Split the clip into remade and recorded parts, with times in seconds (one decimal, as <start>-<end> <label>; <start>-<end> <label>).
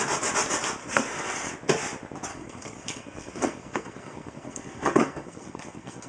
0.0-0.8 recorded; 0.8-1.5 remade; 1.5-2.3 recorded; 2.3-6.1 remade